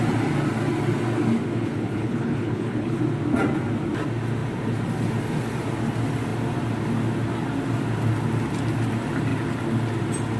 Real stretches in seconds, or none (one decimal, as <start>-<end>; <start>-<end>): 0.0-1.5; 3.0-10.4